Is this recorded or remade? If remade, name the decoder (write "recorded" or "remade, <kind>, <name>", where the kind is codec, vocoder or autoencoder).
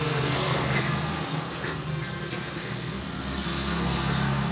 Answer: remade, codec, SNAC